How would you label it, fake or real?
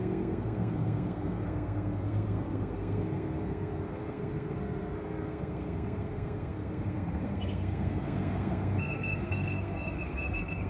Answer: fake